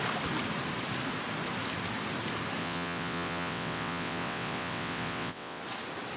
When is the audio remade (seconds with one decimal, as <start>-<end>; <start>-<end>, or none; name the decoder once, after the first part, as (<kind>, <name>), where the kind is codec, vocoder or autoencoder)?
2.6-5.6 (vocoder, WaveNeXt)